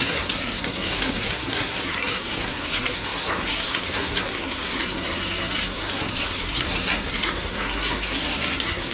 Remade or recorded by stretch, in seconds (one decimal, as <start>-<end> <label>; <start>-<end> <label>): 0.0-8.9 remade